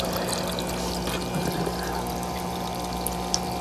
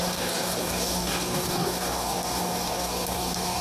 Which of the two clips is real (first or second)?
first